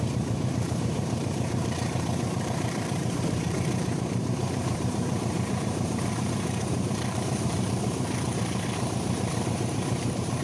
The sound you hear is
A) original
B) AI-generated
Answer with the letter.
B